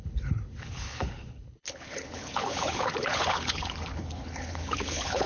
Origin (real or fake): fake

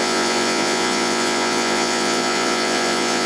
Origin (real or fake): fake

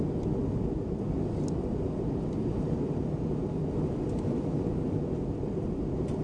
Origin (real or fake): real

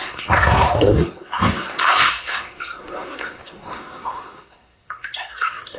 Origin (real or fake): fake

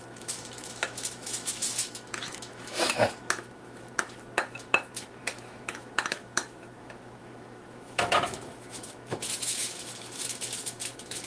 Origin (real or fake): fake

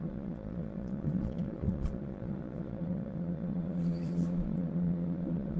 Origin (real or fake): fake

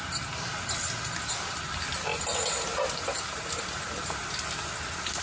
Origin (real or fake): real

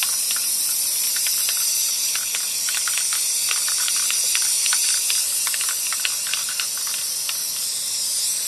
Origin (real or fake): real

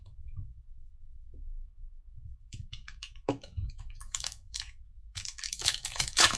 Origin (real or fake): fake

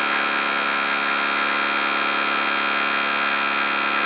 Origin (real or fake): real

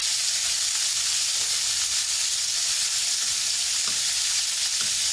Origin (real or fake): real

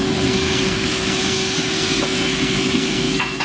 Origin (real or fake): fake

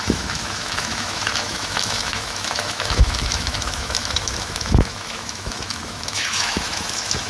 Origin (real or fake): fake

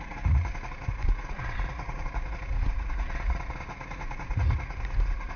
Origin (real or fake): fake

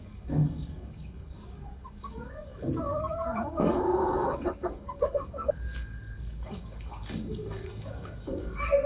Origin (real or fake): fake